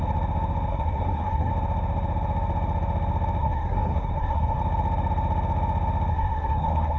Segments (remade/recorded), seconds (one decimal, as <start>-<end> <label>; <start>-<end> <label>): 0.0-0.7 recorded; 0.7-1.5 remade; 1.5-3.4 recorded; 3.4-4.6 remade; 4.6-6.1 recorded; 6.1-7.0 remade